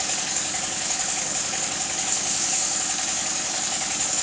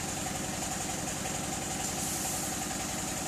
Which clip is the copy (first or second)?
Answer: first